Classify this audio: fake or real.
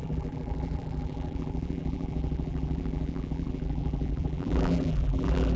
fake